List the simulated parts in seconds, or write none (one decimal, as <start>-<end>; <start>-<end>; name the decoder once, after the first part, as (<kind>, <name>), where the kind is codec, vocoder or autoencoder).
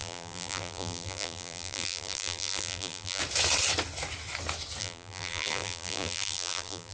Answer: 0.0-3.2 (vocoder, BigVGAN v2); 4.8-6.9